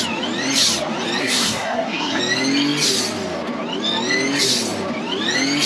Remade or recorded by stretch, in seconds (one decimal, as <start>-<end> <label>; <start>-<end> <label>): 0.0-1.2 recorded; 1.2-2.2 remade; 2.2-5.7 recorded